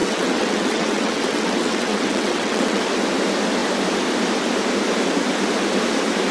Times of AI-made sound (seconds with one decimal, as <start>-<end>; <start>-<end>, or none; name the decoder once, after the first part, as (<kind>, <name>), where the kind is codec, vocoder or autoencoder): 0.0-2.8 (vocoder, WaveNeXt)